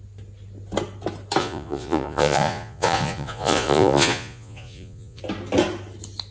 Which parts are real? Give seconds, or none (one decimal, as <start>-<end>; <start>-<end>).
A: 0.0-1.4; 5.2-6.3